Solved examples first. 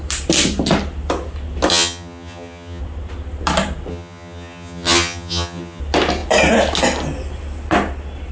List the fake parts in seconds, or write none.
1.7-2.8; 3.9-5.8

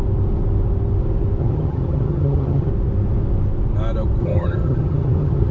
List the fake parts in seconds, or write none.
1.4-2.7; 4.2-5.5

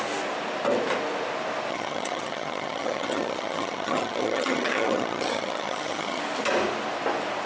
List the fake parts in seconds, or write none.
1.7-6.2